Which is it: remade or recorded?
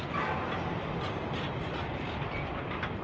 recorded